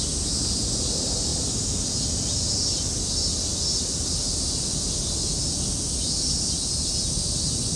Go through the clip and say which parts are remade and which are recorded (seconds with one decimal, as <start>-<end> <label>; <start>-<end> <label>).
0.0-7.8 recorded